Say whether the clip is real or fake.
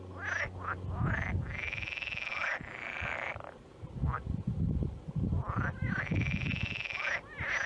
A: real